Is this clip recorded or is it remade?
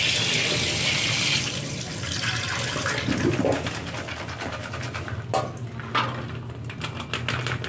recorded